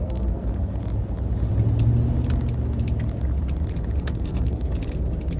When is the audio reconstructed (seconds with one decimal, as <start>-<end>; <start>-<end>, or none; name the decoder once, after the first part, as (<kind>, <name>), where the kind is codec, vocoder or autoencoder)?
0.0-0.8 (codec, SNAC); 4.0-4.7